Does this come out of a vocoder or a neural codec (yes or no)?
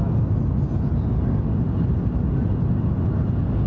no